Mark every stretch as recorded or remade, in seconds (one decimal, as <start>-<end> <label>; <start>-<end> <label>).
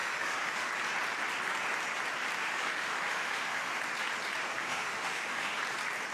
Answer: 0.0-0.7 remade; 0.7-2.4 recorded; 2.4-3.8 remade; 3.8-4.6 recorded; 4.6-5.6 remade; 5.6-6.1 recorded